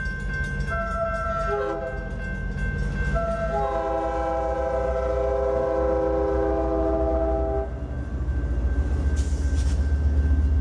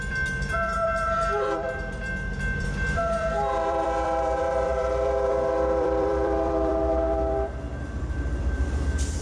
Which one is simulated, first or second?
second